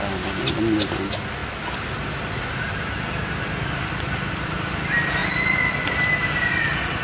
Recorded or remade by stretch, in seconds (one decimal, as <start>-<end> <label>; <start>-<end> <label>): 0.0-7.0 recorded